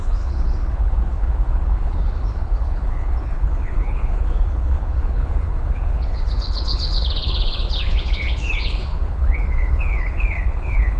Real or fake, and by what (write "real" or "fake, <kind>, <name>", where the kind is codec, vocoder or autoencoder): fake, codec, HILCodec